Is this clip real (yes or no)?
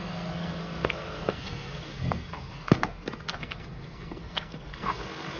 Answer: no